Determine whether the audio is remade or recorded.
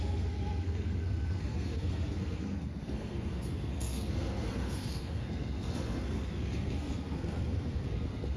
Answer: remade